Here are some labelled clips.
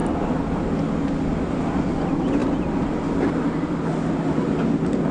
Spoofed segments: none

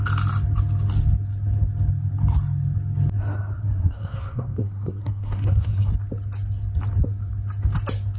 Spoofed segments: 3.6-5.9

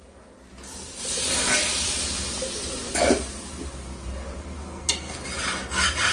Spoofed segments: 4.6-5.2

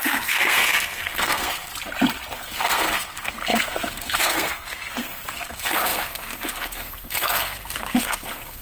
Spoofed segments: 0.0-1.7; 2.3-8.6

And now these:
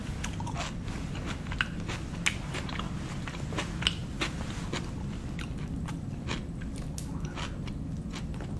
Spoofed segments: none

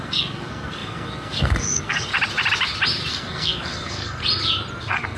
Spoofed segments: 0.0-2.1; 3.1-4.2; 4.8-5.2

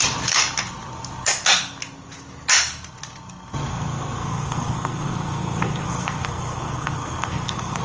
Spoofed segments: 3.7-7.8

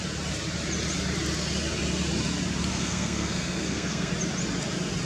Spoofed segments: 2.7-4.1